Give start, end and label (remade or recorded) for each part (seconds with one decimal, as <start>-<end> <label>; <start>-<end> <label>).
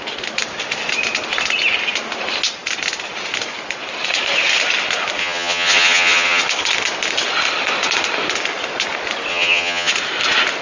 0.0-5.2 recorded; 5.2-6.4 remade; 6.4-9.3 recorded; 9.3-9.9 remade; 9.9-10.6 recorded